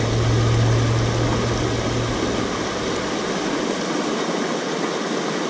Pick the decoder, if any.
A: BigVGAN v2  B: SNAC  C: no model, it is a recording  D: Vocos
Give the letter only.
C